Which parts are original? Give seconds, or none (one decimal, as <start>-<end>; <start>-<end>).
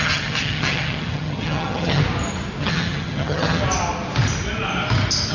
2.0-2.6; 3.6-5.3